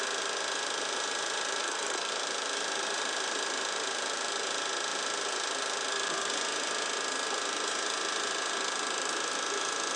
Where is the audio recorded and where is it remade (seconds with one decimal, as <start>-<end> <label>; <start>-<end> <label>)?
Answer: 0.0-1.6 recorded; 1.6-2.1 remade; 2.1-10.0 recorded